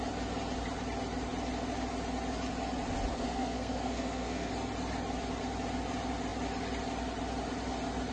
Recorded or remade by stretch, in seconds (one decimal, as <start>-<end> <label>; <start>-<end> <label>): 0.0-3.1 recorded; 3.1-4.5 remade; 4.5-8.1 recorded